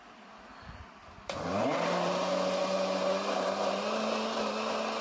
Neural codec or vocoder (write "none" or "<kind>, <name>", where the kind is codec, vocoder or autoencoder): none